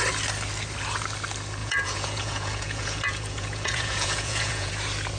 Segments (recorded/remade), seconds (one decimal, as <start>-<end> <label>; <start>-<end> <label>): 0.0-1.6 recorded; 1.6-4.7 remade; 4.7-5.2 recorded